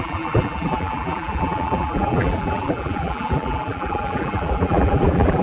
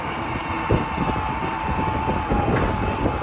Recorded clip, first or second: second